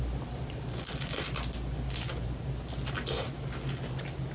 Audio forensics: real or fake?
real